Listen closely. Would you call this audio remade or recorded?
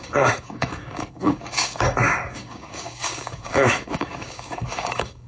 remade